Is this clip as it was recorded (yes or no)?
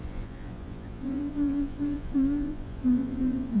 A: no